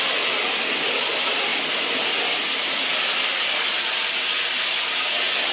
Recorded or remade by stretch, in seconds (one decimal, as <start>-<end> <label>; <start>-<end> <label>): 0.0-5.5 recorded